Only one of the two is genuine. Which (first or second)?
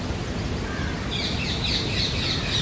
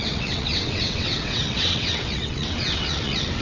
first